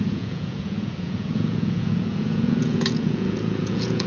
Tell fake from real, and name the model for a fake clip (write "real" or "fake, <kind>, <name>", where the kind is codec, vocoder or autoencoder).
fake, vocoder, Vocos